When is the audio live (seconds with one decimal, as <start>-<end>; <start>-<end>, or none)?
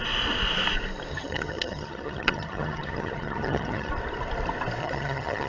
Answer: 0.0-1.1; 3.9-4.8